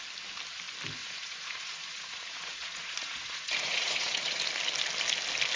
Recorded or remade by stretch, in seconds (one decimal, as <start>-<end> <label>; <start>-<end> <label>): 0.0-1.0 recorded; 1.0-4.4 remade; 4.4-5.6 recorded

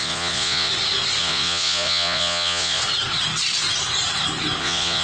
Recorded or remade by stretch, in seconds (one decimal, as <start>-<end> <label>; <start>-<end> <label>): 0.0-0.7 remade; 0.7-1.2 recorded; 1.2-2.8 remade; 2.8-4.6 recorded; 4.6-5.0 remade